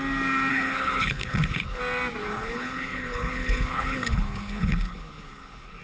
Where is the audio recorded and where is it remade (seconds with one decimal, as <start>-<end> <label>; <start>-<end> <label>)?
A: 0.0-0.5 recorded; 0.5-1.8 remade; 1.8-2.2 recorded; 2.2-5.8 remade